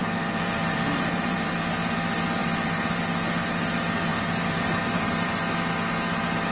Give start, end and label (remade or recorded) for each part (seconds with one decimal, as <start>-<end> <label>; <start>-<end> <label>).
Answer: 0.0-1.7 remade; 1.7-2.4 recorded; 2.4-3.0 remade; 3.0-4.1 recorded; 4.1-5.4 remade; 5.4-6.5 recorded